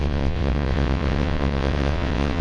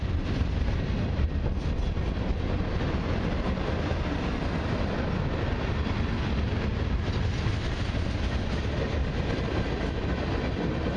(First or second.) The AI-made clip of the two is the first